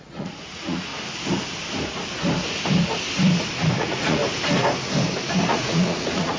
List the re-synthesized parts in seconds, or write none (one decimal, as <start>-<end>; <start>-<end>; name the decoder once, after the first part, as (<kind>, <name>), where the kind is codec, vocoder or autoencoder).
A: 0.0-0.9 (vocoder, Vocos); 3.8-4.2; 5.5-6.4